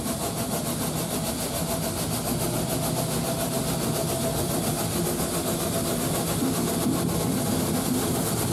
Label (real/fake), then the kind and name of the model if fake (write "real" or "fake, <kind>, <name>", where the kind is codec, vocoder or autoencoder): real